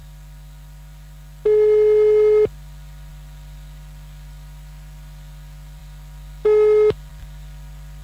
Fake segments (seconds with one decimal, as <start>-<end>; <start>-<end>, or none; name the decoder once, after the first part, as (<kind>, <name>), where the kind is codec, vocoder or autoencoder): none